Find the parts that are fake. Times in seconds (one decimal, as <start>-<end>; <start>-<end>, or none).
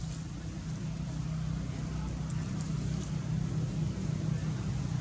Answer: none